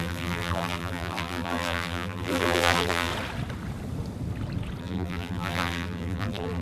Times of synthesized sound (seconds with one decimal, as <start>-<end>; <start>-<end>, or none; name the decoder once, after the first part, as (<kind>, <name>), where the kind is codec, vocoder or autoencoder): 0.0-3.1 (vocoder, BigVGAN v2); 4.8-6.6